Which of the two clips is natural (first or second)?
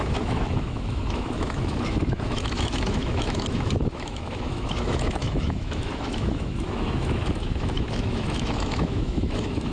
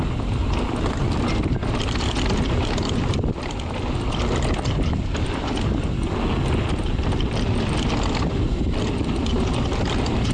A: second